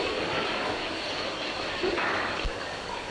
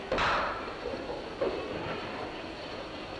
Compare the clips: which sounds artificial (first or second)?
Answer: first